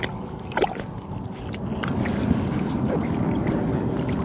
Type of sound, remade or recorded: recorded